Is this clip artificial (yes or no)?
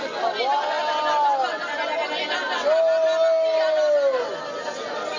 no